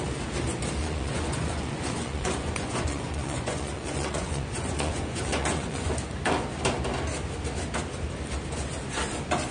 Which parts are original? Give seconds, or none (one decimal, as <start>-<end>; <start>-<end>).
0.0-0.8; 5.9-9.5